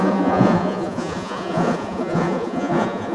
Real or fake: fake